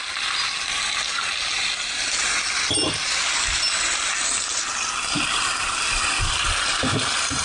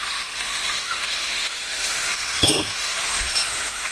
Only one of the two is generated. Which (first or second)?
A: second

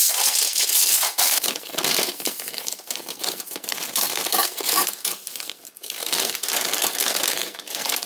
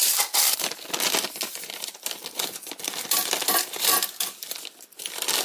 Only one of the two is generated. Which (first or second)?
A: first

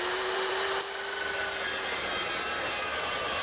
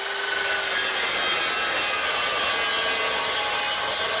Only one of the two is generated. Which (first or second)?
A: first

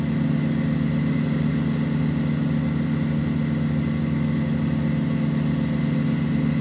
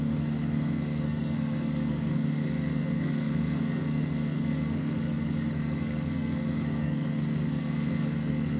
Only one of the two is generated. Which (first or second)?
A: second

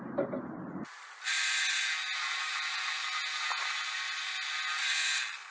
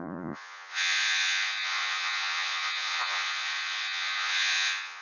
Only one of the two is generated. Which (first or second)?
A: second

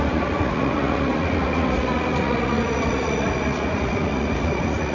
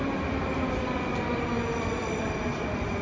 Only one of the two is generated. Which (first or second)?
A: first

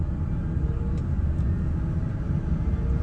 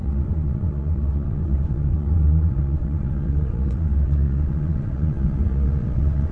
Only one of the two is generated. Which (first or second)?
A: second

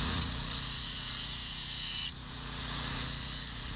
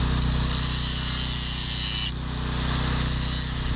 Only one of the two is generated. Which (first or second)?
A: first